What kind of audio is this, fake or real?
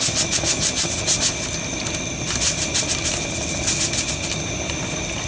real